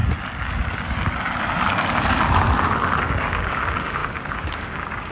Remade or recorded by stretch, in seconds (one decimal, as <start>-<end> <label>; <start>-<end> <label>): 0.0-3.1 recorded; 3.1-5.1 remade